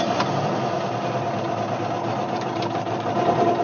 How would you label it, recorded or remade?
recorded